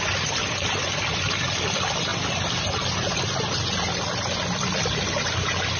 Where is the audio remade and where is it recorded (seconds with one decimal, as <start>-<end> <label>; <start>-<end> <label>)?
0.0-5.8 recorded